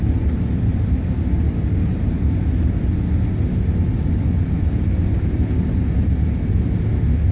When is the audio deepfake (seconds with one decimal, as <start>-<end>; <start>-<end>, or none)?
none